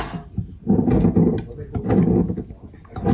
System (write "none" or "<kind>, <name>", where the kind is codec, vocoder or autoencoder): none